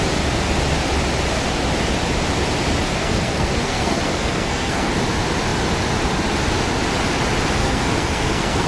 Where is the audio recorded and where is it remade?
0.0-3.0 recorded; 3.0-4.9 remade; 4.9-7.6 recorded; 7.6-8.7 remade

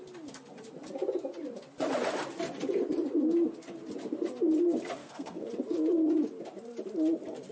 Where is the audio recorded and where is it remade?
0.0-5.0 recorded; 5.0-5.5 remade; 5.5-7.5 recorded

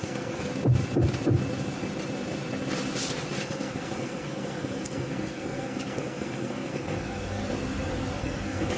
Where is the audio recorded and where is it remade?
0.0-0.5 remade; 0.5-3.4 recorded; 3.4-7.4 remade; 7.4-8.2 recorded; 8.2-8.8 remade